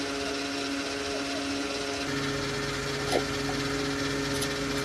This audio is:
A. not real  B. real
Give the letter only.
B